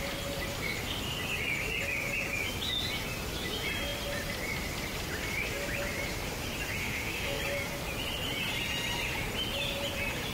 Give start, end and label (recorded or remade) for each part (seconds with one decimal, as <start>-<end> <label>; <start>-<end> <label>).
0.0-6.8 recorded; 6.8-7.4 remade; 7.4-10.3 recorded